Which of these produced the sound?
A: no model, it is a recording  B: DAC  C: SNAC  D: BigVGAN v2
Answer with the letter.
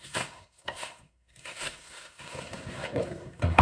C